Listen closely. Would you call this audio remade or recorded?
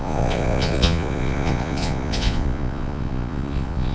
remade